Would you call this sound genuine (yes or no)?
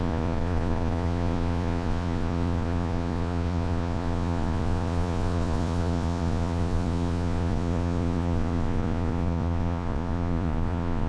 no